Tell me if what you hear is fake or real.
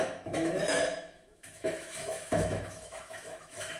fake